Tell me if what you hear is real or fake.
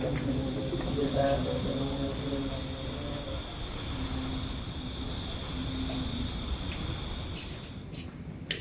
real